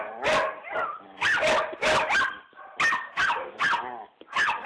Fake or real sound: real